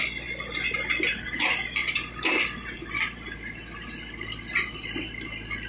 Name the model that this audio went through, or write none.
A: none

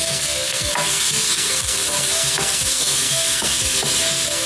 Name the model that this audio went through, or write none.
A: codec, SNAC